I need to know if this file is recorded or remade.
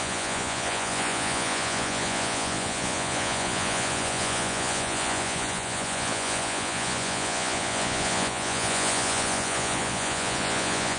remade